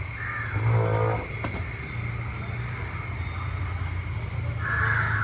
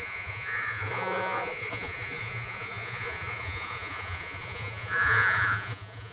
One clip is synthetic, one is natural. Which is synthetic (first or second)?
second